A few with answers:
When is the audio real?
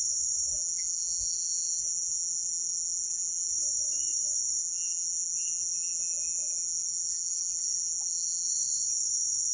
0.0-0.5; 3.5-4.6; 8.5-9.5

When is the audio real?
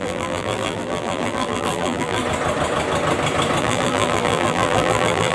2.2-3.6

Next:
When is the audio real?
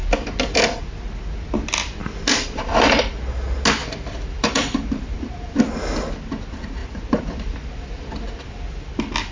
0.0-2.0; 3.2-3.8; 5.6-6.8; 8.4-9.3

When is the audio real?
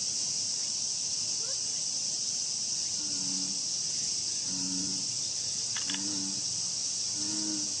3.0-4.3; 6.7-7.8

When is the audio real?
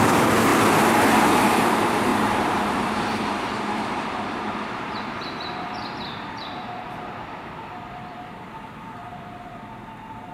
0.0-2.1; 7.2-10.3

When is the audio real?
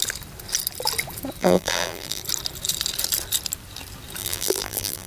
0.0-1.4; 2.2-4.2